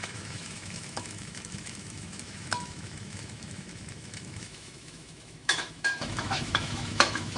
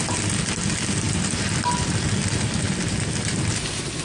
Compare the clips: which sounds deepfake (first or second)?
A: first